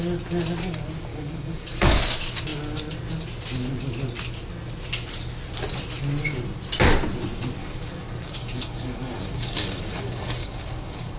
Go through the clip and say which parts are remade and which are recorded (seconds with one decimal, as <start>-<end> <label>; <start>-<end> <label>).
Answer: 0.0-1.1 recorded; 1.1-2.0 remade; 2.0-7.6 recorded; 7.6-11.2 remade